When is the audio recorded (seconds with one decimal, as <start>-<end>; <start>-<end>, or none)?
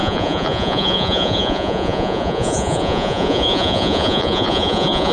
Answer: none